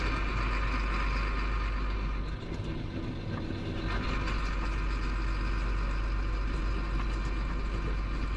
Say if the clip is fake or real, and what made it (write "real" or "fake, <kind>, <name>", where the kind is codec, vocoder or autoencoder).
real